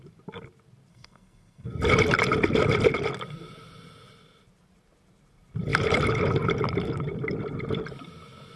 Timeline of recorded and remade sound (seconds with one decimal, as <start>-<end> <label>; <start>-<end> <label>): 0.0-0.9 recorded; 0.9-1.8 remade; 1.8-8.6 recorded